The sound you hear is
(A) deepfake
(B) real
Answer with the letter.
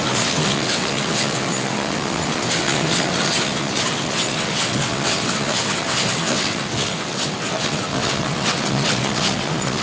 A